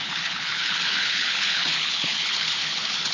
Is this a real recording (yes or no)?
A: no